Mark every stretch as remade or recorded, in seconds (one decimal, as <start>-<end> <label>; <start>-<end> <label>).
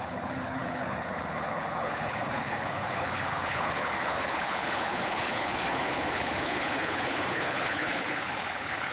0.0-8.9 remade